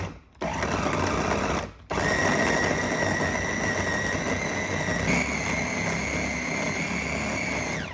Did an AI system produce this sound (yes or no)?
no